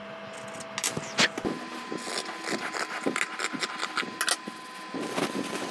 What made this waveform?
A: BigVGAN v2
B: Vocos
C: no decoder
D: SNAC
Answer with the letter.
C